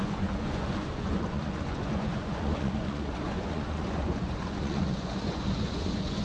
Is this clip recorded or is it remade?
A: remade